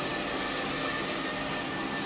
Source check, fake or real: real